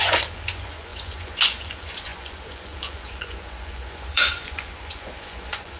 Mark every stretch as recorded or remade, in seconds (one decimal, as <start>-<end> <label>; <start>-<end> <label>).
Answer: 0.0-5.8 remade